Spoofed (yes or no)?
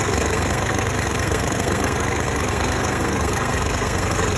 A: yes